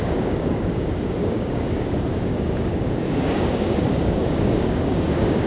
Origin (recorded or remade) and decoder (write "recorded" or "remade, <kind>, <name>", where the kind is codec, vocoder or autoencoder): remade, codec, DAC